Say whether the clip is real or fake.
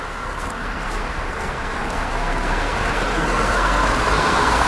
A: fake